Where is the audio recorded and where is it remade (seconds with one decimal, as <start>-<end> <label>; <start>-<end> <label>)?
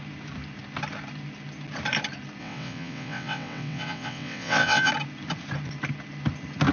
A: 0.0-2.4 recorded; 2.4-4.9 remade; 4.9-6.7 recorded